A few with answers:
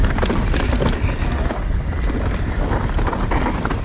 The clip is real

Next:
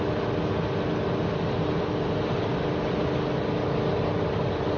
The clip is real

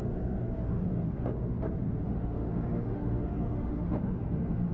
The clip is fake